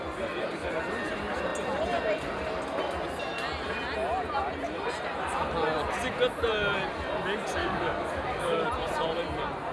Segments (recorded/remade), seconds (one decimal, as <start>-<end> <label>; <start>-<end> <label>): 0.0-7.6 recorded; 7.6-8.7 remade; 8.7-9.7 recorded